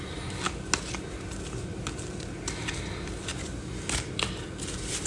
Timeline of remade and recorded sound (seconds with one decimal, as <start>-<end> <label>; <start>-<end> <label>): 0.0-5.1 recorded